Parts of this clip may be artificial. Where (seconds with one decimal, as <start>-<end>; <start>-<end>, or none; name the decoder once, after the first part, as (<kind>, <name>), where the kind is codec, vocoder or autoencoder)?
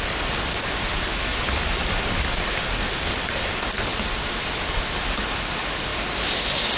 1.3-1.9 (vocoder, BigVGAN v2); 3.9-4.7; 5.9-6.8